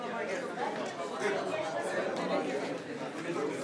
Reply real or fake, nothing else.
real